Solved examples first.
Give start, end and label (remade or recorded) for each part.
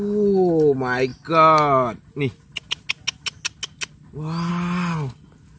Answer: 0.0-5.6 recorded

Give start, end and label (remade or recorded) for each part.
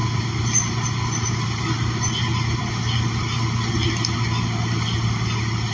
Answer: 0.0-5.7 recorded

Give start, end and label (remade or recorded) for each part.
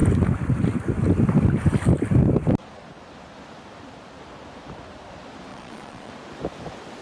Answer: 0.0-5.5 recorded; 5.5-6.1 remade; 6.1-7.0 recorded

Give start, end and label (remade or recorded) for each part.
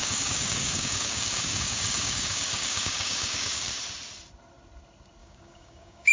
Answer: 0.0-3.7 remade; 3.7-5.2 recorded; 5.2-6.1 remade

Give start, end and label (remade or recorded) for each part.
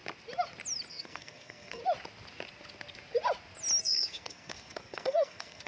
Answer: 0.0-0.9 recorded; 0.9-1.8 remade; 1.8-3.8 recorded; 3.8-5.7 remade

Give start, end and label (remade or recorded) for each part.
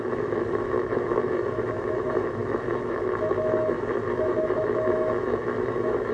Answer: 0.0-6.1 remade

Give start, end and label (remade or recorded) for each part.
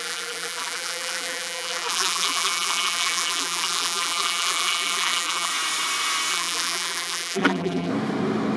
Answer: 0.0-5.5 remade; 5.5-6.3 recorded; 6.3-7.9 remade; 7.9-8.6 recorded